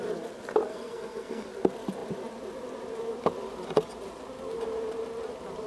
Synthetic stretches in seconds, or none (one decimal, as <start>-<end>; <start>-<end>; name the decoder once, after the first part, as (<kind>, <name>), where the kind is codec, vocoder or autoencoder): 0.7-1.5 (codec, SNAC)